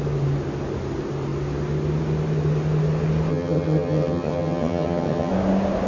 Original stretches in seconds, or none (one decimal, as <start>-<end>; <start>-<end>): 0.0-3.3; 5.3-5.9